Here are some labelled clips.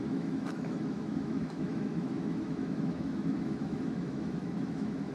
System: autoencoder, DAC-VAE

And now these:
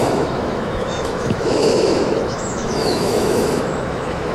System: autoencoder, DAC-VAE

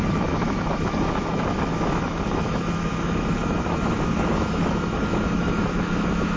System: autoencoder, DAC-VAE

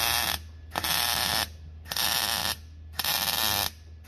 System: none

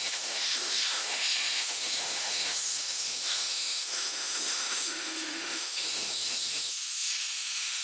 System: autoencoder, DAC-VAE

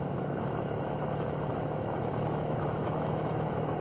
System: autoencoder, DAC-VAE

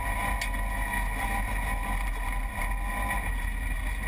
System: none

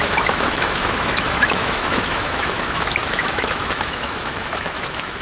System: autoencoder, DAC-VAE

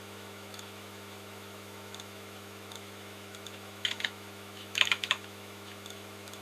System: autoencoder, DAC-VAE